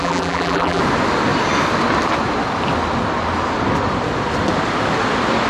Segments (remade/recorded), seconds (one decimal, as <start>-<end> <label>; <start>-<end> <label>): 0.0-0.8 remade; 0.8-5.5 recorded